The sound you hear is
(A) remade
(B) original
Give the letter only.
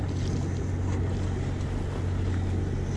B